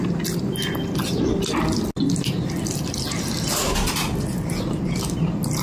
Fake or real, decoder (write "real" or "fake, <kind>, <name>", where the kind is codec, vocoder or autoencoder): real